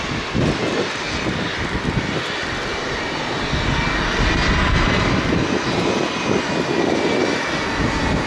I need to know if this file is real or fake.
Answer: real